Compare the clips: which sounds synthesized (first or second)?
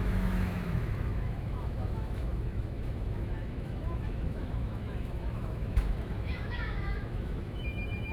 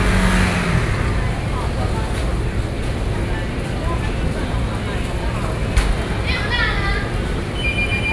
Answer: first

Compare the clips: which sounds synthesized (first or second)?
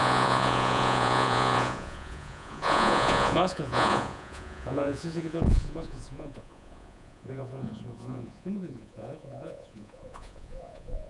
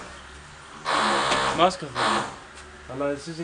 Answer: first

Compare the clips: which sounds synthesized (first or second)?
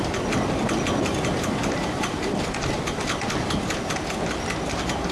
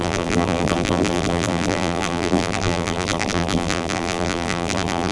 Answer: second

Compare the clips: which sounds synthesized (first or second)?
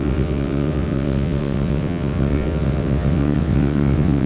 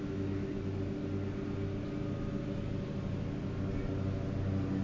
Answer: first